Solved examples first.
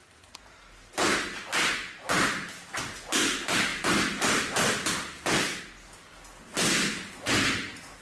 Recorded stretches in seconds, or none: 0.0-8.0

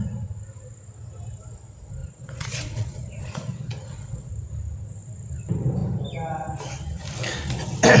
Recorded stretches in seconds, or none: 0.0-2.0; 4.3-8.0

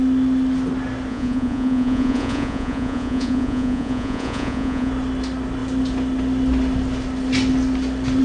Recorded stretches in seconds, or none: 0.0-1.1; 4.9-8.2